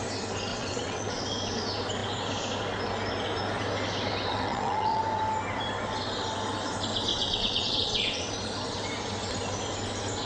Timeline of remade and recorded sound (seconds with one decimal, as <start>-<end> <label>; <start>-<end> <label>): 0.0-0.5 recorded; 0.5-1.2 remade; 1.2-4.3 recorded; 4.3-5.0 remade; 5.0-7.1 recorded; 7.1-8.3 remade; 8.3-10.2 recorded